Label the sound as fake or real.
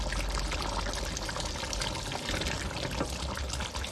real